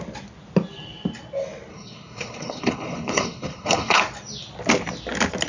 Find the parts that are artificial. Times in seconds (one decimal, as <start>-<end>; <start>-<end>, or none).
1.7-4.0